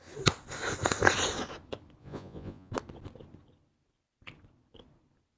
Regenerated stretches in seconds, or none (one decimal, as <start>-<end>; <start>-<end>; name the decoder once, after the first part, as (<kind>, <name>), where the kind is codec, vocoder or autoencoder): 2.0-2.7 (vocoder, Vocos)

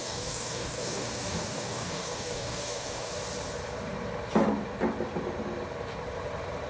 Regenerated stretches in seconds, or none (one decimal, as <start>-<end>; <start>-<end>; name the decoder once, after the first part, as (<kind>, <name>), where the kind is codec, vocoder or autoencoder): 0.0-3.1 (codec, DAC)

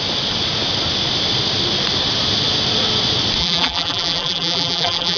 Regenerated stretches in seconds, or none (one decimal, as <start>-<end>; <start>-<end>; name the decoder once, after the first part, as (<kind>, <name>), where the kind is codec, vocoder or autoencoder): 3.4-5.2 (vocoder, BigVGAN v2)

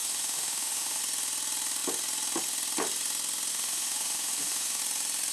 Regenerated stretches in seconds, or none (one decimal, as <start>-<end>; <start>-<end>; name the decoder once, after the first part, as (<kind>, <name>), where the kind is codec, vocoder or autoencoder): 0.0-1.0 (autoencoder, DAC-VAE); 3.5-4.8

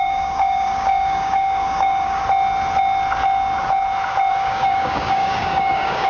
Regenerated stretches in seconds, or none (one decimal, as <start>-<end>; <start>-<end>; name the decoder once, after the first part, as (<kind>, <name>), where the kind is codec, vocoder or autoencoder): 0.0-2.2 (codec, DAC); 4.3-6.1